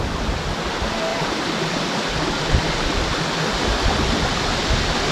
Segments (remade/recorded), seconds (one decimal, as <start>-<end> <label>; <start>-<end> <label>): 0.0-5.1 recorded